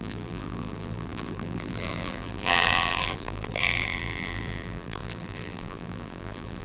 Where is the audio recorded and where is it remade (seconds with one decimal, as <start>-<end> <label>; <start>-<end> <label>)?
0.0-6.6 remade